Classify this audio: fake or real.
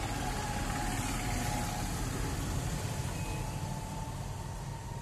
real